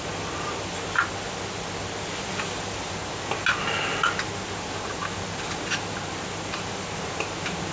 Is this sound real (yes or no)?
yes